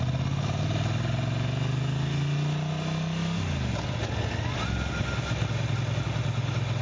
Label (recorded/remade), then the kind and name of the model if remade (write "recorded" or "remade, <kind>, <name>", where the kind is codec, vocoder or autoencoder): recorded